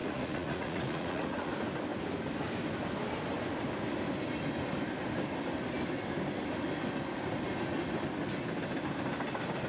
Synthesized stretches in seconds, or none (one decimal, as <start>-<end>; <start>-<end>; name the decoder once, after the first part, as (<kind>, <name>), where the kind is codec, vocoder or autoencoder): 0.0-1.5 (vocoder, Vocos)